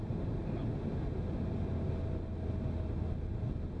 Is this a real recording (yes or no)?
yes